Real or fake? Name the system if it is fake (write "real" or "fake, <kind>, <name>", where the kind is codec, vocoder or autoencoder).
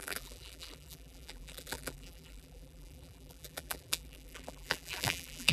fake, vocoder, BigVGAN v2